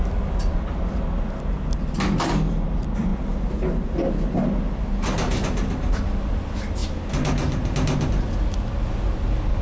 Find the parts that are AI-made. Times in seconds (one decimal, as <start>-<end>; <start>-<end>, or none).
none

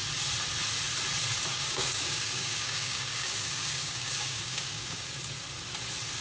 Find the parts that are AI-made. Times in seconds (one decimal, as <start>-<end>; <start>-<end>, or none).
1.5-5.2

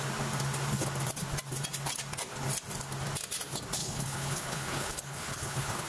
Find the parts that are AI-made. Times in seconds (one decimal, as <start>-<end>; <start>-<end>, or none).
3.8-5.9

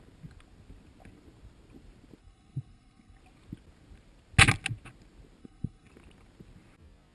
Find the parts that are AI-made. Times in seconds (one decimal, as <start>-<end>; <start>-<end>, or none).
2.2-3.2; 5.4-5.9

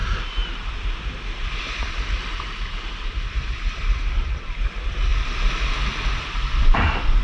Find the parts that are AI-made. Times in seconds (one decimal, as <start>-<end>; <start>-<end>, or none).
0.0-4.3